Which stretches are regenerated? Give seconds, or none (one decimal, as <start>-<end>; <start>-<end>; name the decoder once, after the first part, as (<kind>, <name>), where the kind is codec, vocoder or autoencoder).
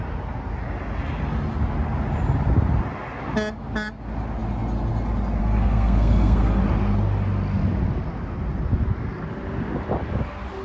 5.4-6.6 (codec, SNAC)